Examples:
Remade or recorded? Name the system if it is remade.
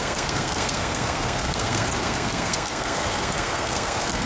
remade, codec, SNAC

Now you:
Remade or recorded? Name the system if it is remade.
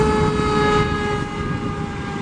recorded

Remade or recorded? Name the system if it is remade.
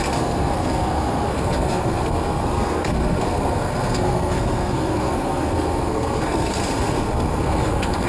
remade, codec, SNAC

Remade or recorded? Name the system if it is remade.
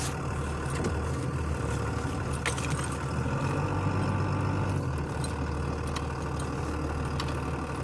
recorded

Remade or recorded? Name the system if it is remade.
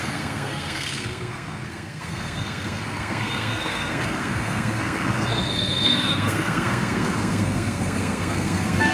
remade, codec, SNAC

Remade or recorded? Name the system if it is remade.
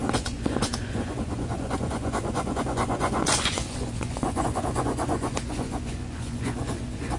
remade, vocoder, Vocos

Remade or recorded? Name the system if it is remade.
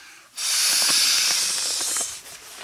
recorded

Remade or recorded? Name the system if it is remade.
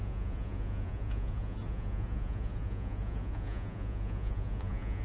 remade, vocoder, Vocos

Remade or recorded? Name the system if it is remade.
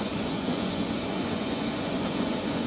remade, vocoder, Vocos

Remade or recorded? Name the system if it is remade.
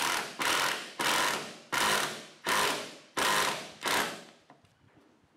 recorded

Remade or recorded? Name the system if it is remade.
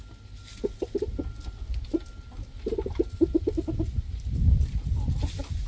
recorded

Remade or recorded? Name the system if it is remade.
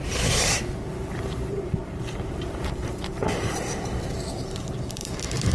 remade, vocoder, BigVGAN v2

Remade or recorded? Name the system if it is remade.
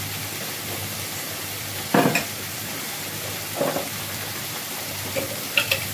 remade, vocoder, BigVGAN v2